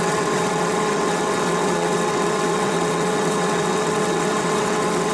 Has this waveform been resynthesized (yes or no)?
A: yes